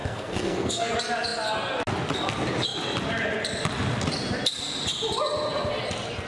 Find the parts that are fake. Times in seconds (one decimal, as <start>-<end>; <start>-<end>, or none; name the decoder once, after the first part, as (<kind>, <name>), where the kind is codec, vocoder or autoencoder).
0.0-0.9 (codec, SNAC)